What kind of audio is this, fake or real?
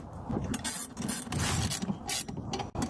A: real